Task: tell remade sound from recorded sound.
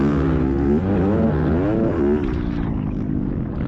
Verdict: recorded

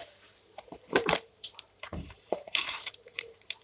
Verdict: remade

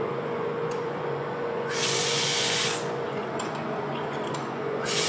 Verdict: remade